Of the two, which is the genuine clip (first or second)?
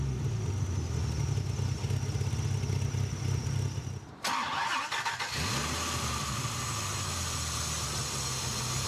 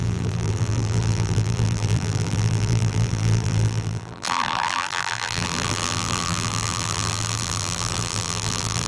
first